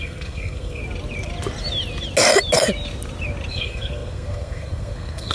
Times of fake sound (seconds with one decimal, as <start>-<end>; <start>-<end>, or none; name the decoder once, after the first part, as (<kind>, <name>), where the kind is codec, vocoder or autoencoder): 0.0-0.8 (codec, SNAC); 3.5-5.3